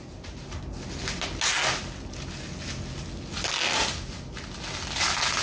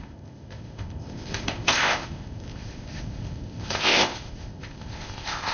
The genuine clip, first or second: first